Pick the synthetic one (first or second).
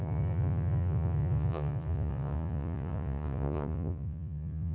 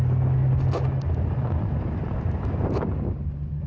first